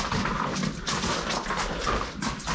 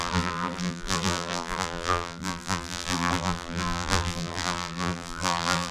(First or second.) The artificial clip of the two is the second